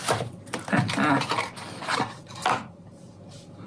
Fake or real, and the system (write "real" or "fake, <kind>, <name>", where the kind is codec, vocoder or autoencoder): real